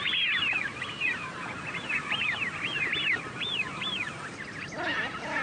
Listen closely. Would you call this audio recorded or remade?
recorded